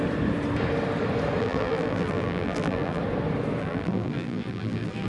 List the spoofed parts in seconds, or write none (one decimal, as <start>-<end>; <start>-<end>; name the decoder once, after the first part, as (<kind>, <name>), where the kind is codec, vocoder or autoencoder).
1.4-3.0 (vocoder, BigVGAN v2); 3.6-5.1